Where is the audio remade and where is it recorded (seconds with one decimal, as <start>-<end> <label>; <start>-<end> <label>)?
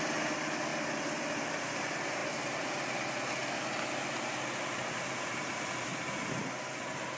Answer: 0.0-2.2 remade; 2.2-5.2 recorded; 5.2-5.9 remade; 5.9-7.2 recorded